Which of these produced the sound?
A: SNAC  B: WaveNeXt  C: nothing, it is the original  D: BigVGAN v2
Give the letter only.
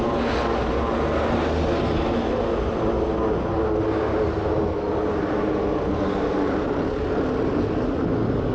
C